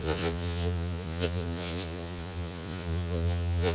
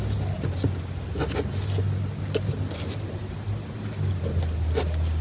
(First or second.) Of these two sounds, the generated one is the first